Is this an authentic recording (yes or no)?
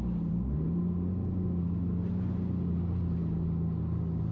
yes